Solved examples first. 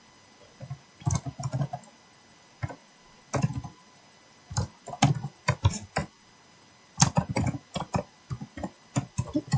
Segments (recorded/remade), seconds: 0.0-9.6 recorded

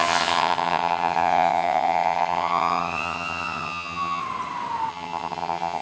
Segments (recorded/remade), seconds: 0.0-4.2 remade; 4.2-4.9 recorded; 4.9-5.8 remade

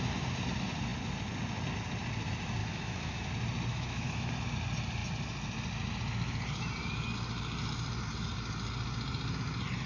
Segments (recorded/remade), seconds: 0.0-2.6 recorded; 2.6-3.3 remade; 3.3-3.7 recorded; 3.7-4.3 remade; 4.3-9.9 recorded

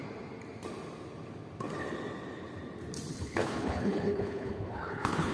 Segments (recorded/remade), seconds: 0.0-3.1 recorded; 3.1-5.3 remade

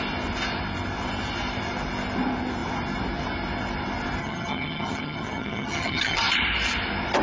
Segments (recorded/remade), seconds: 0.0-4.2 recorded; 4.2-6.2 remade; 6.2-7.2 recorded

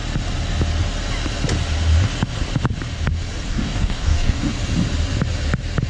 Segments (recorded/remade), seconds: 0.0-3.5 recorded; 3.5-4.5 remade; 4.5-5.9 recorded